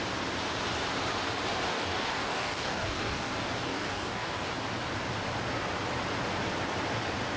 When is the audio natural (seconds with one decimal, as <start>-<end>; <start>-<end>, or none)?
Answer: 0.0-1.7; 3.3-3.7; 4.5-7.4